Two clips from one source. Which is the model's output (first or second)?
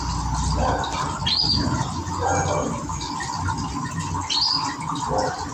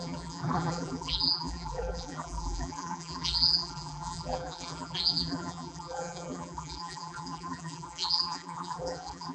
second